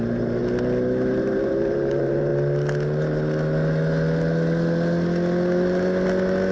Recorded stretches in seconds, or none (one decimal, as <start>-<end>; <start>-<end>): 0.4-1.2; 2.3-6.5